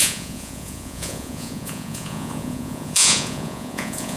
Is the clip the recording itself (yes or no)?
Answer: no